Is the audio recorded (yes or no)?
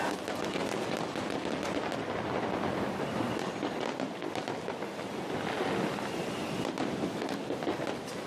yes